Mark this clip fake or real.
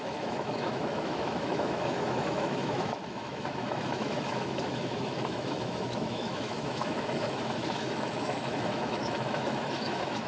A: fake